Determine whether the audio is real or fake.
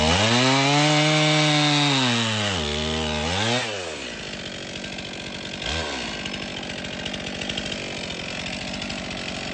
real